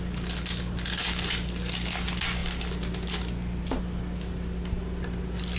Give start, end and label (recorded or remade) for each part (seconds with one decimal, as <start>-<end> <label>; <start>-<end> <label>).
0.0-5.6 recorded